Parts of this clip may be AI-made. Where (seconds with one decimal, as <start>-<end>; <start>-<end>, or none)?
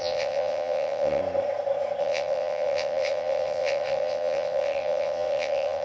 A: 0.0-1.2; 2.0-5.8